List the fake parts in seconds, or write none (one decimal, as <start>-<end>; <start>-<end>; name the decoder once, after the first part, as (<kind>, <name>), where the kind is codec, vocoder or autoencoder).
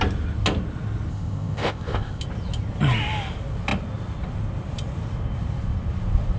1.1-2.2 (codec, ZipCodec)